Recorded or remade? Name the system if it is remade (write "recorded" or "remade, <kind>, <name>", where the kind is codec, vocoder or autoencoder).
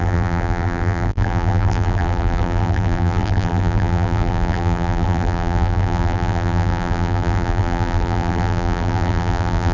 remade, vocoder, BigVGAN v2